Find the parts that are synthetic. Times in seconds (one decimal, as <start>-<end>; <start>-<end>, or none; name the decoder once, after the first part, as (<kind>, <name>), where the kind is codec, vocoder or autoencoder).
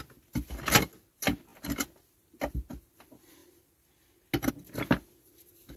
none